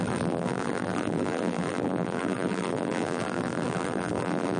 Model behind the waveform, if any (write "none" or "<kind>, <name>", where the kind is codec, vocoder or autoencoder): vocoder, BigVGAN v2